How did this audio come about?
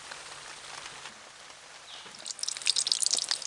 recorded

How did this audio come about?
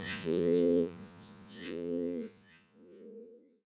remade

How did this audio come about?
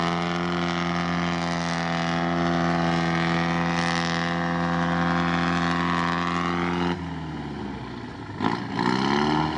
recorded